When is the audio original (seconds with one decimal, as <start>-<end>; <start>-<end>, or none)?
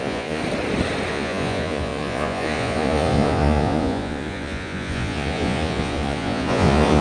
0.4-1.1